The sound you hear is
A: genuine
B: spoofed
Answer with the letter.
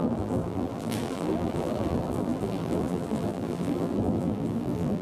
B